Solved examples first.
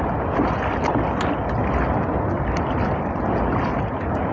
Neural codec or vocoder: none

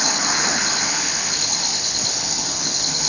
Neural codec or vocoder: codec, HILCodec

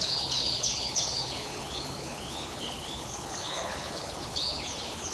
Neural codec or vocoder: codec, HILCodec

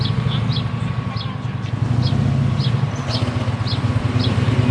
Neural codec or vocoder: none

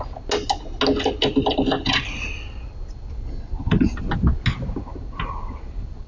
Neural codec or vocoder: none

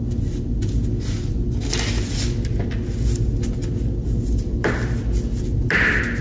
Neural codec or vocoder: none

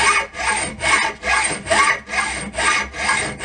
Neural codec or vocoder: none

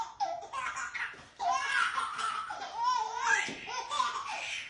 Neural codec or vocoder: none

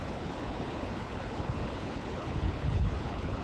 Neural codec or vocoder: codec, HILCodec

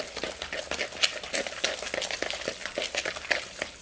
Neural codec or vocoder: none